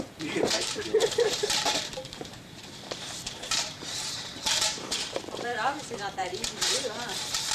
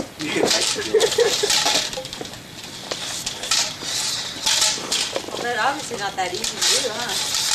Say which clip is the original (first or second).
second